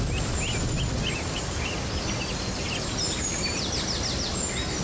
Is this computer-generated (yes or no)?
no